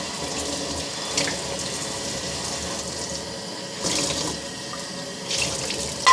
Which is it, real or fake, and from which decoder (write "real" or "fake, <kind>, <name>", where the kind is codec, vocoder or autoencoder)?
real